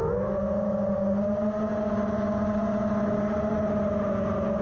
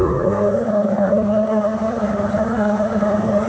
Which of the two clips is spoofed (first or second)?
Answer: second